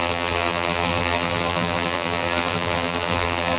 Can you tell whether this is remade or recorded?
remade